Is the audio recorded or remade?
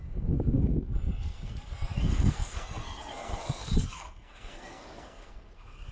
remade